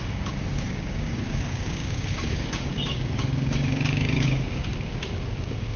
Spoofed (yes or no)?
yes